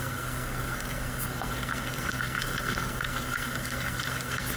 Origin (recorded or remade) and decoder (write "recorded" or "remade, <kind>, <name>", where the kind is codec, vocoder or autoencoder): remade, codec, SNAC